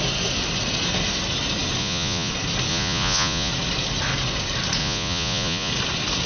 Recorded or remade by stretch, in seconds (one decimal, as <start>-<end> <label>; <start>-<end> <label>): 0.0-1.8 recorded; 1.8-2.3 remade; 2.3-2.7 recorded; 2.7-3.5 remade; 3.5-4.8 recorded; 4.8-5.7 remade; 5.7-6.3 recorded